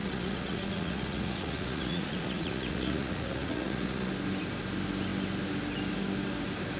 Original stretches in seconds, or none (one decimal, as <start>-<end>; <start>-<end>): 4.1-6.8